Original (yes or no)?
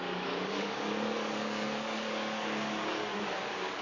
no